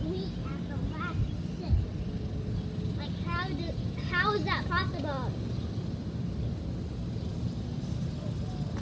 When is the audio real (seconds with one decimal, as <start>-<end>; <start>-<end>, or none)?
0.0-8.8

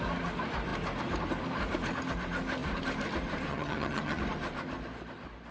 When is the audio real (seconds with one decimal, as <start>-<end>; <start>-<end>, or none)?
0.0-3.5; 4.2-5.5

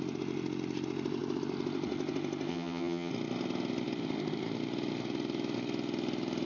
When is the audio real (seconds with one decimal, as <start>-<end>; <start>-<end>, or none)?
0.0-2.5; 3.1-6.4

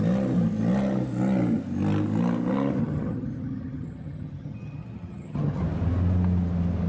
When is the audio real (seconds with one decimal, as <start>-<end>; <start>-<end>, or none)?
0.0-2.8; 5.6-6.9

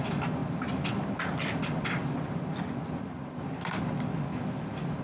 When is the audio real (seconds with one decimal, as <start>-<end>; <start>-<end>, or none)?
0.0-5.0

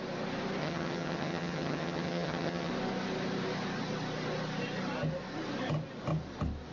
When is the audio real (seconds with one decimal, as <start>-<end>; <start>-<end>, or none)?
0.0-0.6; 2.7-6.7